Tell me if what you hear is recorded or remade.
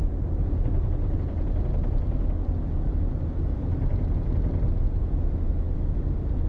recorded